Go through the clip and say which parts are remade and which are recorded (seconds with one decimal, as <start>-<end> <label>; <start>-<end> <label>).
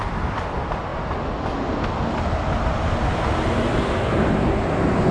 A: 0.0-5.1 recorded